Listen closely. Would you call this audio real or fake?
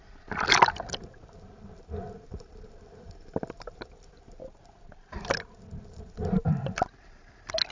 real